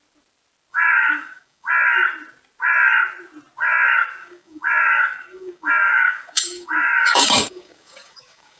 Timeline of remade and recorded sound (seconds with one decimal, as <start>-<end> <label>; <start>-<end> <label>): 0.0-0.7 recorded; 0.7-1.7 remade; 1.7-4.2 recorded; 4.2-8.6 remade